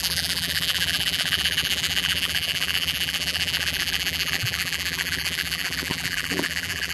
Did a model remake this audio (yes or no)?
yes